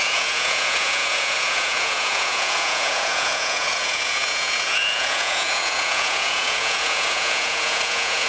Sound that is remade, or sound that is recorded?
remade